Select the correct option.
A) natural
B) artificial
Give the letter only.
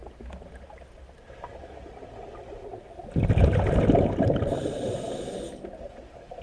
A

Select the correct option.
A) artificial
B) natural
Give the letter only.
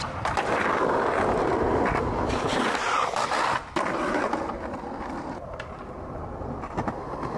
B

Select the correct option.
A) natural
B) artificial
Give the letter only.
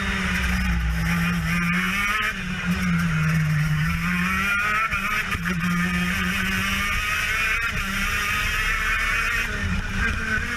A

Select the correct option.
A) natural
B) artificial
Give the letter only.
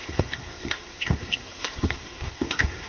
B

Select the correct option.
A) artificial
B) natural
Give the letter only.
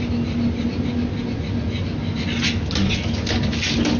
B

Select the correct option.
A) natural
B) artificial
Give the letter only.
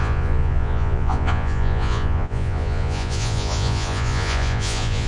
B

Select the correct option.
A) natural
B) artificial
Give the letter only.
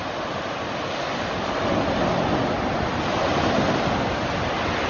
A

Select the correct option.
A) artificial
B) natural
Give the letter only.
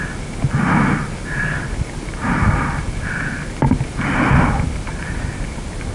B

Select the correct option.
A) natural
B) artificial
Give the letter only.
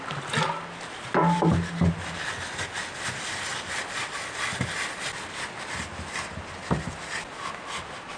A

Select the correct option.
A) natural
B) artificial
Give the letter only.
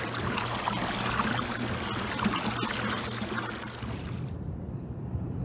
A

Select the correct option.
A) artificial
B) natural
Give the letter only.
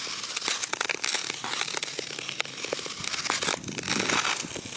B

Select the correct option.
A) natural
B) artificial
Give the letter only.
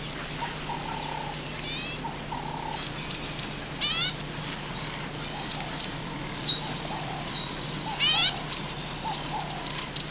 A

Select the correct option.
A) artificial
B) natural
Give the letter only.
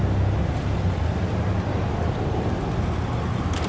B